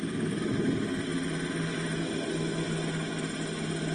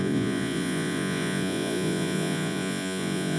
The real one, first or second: first